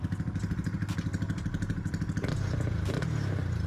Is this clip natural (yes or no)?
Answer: yes